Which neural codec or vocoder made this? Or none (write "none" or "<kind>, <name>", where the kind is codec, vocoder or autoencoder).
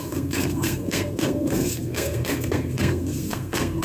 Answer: codec, SNAC